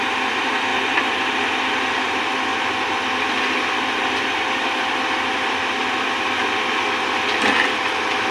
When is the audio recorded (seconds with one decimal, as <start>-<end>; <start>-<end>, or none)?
0.0-8.3